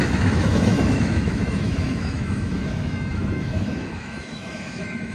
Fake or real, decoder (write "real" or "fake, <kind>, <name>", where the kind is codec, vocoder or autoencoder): fake, autoencoder, DAC-VAE